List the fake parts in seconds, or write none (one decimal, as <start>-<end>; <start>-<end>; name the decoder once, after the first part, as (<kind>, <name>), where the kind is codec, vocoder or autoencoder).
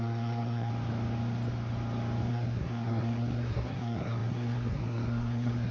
0.0-0.7 (codec, SNAC); 2.3-5.7